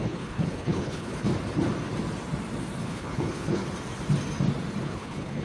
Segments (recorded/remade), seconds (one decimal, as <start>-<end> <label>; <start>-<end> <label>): 0.0-1.3 remade; 1.3-2.8 recorded; 2.8-3.6 remade; 3.6-4.8 recorded; 4.8-5.4 remade